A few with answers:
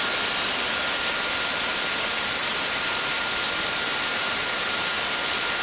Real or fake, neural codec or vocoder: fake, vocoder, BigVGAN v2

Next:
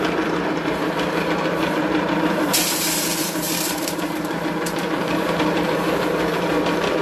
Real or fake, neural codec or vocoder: fake, vocoder, BigVGAN v2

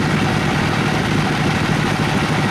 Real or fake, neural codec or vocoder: real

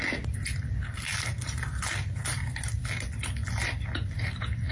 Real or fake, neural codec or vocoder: real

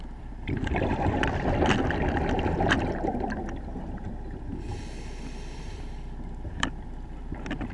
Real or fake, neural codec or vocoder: fake, vocoder, BigVGAN v2